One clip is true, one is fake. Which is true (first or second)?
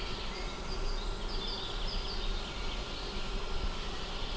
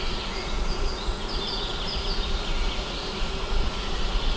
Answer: first